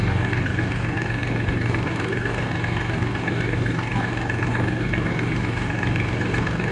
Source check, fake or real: fake